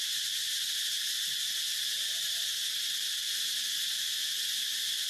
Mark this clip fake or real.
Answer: real